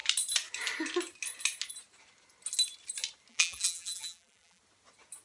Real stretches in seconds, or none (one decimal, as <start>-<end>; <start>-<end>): 0.0-3.3; 4.6-5.2